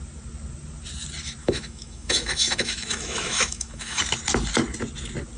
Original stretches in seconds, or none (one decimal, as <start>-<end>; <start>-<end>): 0.0-1.4; 4.0-5.4